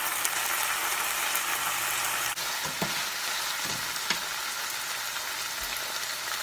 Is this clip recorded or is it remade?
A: recorded